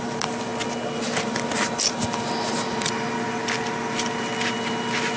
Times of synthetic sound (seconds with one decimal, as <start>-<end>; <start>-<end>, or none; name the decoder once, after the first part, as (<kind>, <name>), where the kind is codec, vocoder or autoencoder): none